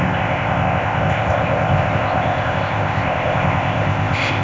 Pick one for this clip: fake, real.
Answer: fake